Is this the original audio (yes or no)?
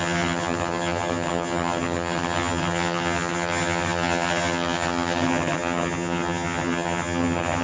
no